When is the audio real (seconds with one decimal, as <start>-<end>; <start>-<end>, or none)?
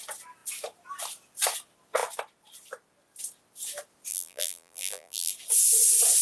0.0-4.1; 5.3-6.2